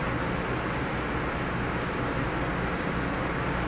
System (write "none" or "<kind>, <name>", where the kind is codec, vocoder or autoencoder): none